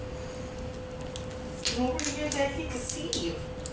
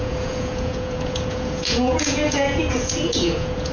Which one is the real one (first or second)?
first